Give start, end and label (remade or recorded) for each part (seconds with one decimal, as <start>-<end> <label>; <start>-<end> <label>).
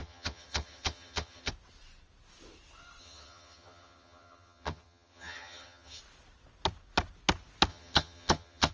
0.0-1.5 remade; 1.5-3.0 recorded; 3.0-6.0 remade; 6.0-7.7 recorded; 7.7-8.7 remade